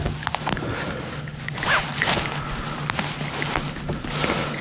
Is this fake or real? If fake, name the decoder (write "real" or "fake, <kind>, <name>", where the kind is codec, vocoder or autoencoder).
real